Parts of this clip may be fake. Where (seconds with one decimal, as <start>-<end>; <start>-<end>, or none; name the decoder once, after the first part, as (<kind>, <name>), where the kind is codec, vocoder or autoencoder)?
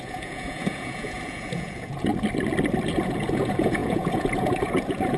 0.0-2.1 (vocoder, Vocos); 2.9-5.2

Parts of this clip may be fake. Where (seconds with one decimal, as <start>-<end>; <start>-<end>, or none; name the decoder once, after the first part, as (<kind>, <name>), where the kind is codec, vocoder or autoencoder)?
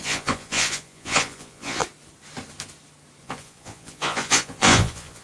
0.0-1.8 (vocoder, Vocos); 3.2-5.2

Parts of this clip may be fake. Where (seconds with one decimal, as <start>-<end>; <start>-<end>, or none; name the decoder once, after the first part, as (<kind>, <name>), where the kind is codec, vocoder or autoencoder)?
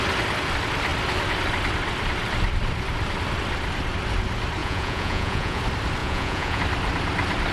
4.6-5.6 (vocoder, Vocos); 6.0-6.6